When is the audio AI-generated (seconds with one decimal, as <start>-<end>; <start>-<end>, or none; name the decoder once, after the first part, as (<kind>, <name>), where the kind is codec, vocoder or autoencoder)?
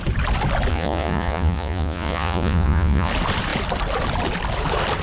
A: 0.7-3.1 (vocoder, Vocos)